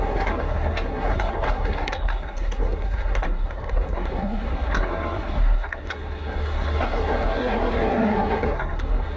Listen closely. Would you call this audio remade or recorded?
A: remade